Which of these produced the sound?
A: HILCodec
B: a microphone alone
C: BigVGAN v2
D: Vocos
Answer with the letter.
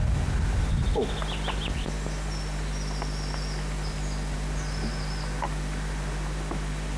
B